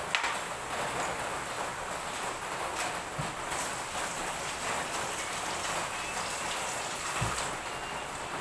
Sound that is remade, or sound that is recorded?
recorded